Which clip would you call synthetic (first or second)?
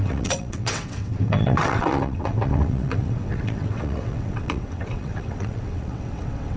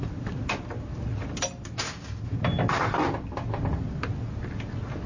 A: first